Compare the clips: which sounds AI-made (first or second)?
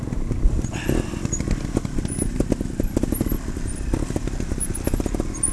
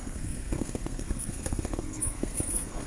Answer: second